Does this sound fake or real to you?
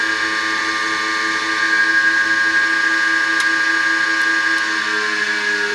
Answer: real